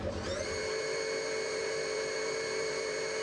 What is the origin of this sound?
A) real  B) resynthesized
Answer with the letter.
B